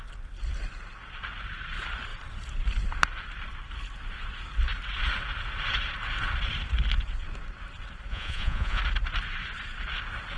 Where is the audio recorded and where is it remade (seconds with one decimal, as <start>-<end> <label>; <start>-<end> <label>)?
0.0-8.1 recorded; 8.1-8.8 remade; 8.8-10.4 recorded